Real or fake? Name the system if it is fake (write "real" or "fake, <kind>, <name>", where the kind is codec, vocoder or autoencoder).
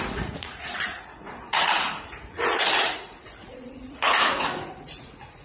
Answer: fake, vocoder, Vocos